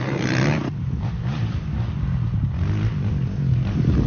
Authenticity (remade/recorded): recorded